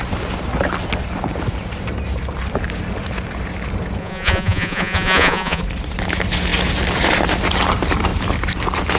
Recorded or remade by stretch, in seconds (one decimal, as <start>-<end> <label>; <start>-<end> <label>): 0.0-4.0 recorded; 4.0-5.6 remade; 5.6-9.0 recorded